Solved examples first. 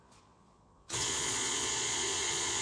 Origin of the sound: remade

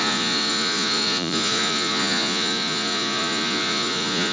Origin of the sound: remade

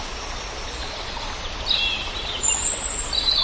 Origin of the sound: recorded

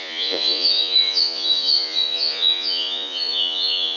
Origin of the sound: remade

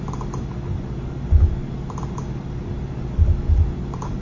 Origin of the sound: recorded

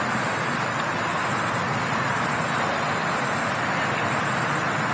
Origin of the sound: recorded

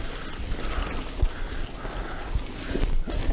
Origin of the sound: recorded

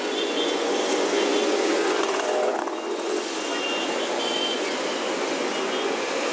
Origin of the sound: remade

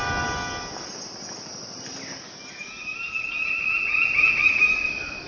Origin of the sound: recorded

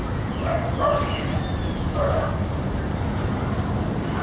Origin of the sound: recorded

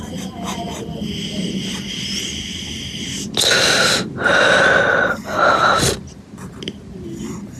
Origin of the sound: recorded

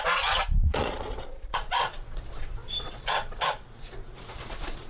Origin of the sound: remade